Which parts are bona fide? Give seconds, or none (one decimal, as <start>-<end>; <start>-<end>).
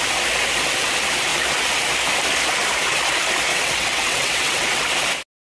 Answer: 0.0-3.5; 4.8-5.5